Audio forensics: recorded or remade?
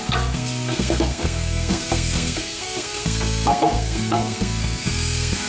remade